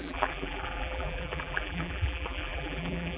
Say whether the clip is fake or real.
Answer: fake